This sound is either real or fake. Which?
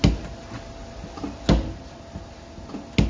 real